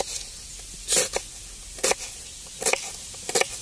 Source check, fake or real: real